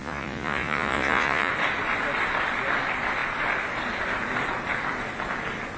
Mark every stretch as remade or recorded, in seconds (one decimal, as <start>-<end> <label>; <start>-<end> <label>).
0.0-1.5 remade; 1.5-5.8 recorded

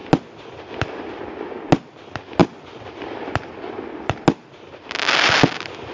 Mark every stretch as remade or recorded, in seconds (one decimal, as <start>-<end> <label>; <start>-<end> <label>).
0.0-5.9 recorded

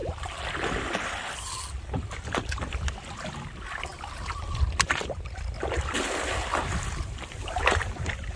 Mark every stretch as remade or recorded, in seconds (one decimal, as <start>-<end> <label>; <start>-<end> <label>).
0.0-8.4 recorded

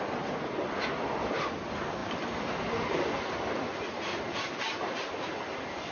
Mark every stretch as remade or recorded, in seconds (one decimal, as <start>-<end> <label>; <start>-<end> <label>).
0.0-5.9 recorded